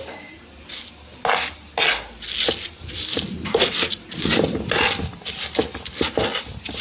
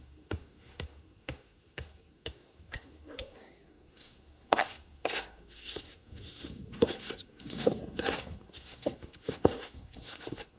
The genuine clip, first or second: first